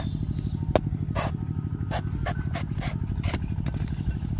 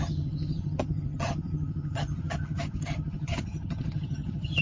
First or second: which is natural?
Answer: first